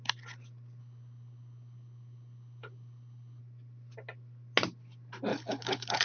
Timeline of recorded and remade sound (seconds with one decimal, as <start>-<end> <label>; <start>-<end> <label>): 0.0-0.8 recorded; 0.8-3.4 remade; 3.4-5.3 recorded; 5.3-6.0 remade